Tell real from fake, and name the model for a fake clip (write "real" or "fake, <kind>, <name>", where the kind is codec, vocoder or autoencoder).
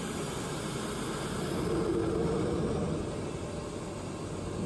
real